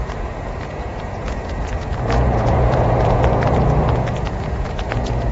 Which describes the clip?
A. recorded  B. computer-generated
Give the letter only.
B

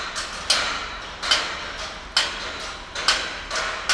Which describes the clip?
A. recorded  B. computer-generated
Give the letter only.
A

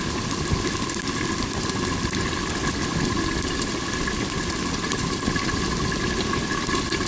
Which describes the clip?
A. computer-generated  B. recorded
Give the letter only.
B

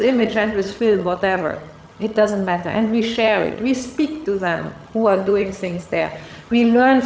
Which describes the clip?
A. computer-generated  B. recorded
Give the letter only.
A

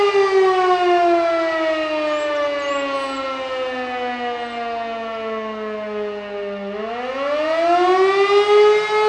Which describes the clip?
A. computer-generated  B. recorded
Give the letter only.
B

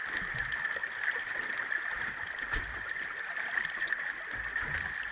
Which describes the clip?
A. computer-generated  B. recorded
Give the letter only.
B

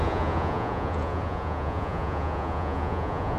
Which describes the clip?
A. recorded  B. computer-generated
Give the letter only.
B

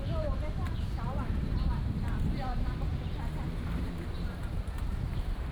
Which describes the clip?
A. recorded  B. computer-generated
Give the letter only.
B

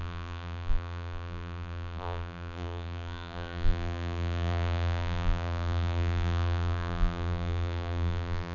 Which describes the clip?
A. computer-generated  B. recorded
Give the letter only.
A